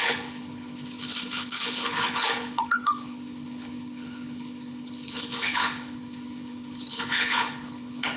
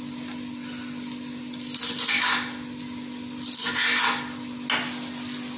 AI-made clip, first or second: first